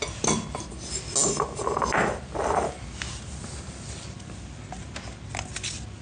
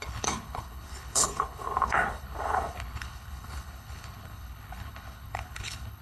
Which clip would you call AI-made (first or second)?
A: second